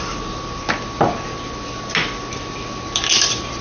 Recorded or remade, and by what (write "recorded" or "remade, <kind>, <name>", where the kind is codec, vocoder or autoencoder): recorded